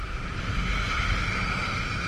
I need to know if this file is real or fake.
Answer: real